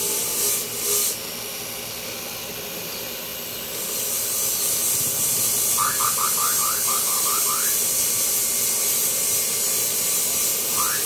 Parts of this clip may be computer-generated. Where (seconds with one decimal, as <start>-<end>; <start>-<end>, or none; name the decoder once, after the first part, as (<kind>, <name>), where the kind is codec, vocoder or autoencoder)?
none